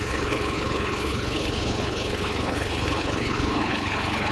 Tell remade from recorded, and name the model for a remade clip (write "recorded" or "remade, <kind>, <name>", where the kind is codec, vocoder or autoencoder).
remade, codec, HILCodec